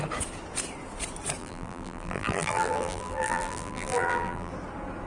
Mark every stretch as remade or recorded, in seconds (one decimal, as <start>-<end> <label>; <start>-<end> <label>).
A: 0.0-1.4 recorded; 1.4-4.5 remade; 4.5-5.1 recorded